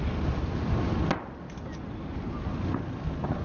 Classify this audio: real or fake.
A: real